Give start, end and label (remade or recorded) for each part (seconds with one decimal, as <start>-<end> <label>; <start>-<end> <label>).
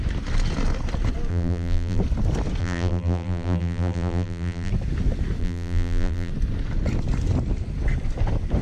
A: 0.0-1.3 recorded; 1.3-2.0 remade; 2.0-2.6 recorded; 2.6-4.7 remade; 4.7-5.4 recorded; 5.4-6.3 remade; 6.3-8.6 recorded